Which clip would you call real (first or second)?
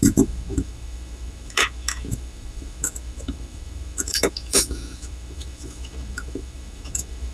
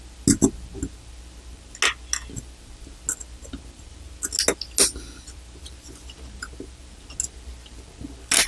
second